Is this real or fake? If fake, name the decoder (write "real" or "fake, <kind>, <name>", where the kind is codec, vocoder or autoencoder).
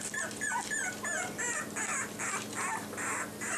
real